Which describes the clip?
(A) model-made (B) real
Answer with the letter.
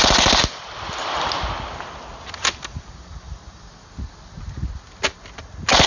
B